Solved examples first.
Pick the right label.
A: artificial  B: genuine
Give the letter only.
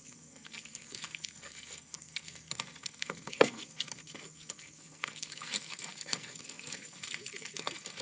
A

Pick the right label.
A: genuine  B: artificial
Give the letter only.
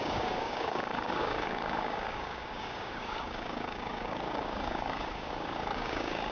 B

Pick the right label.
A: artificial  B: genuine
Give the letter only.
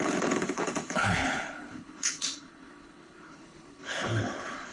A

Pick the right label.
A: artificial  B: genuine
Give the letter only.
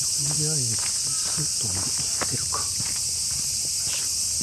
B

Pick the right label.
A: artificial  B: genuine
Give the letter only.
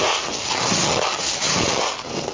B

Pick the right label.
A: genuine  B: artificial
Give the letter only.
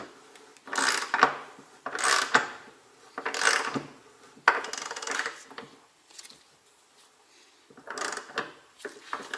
A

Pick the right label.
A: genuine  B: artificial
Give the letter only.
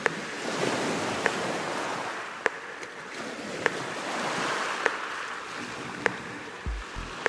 A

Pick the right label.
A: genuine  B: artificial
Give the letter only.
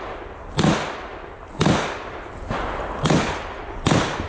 A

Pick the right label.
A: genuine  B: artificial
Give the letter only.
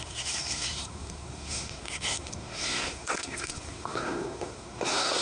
B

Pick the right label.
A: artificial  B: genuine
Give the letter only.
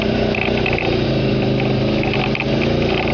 B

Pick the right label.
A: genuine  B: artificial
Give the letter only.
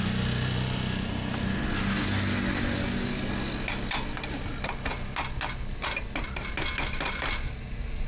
A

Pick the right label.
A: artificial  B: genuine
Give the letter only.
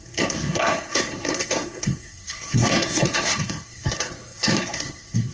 A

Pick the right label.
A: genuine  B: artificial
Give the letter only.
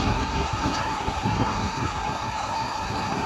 B